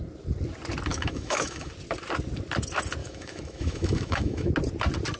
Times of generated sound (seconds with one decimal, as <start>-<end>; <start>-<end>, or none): 0.9-1.7; 3.0-4.5